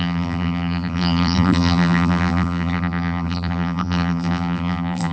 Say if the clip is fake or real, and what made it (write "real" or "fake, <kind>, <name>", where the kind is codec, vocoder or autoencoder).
fake, vocoder, BigVGAN v2